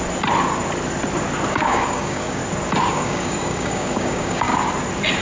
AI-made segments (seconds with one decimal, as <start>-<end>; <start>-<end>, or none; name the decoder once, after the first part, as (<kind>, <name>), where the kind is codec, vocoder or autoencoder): 1.5-2.4 (codec, DAC); 2.9-4.5